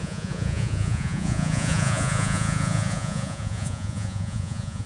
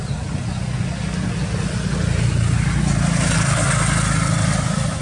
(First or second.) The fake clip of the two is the first